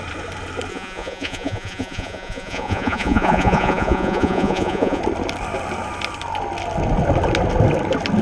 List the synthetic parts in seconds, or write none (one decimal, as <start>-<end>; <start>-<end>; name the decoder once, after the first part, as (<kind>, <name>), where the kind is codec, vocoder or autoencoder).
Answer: 0.7-5.0 (vocoder, Vocos)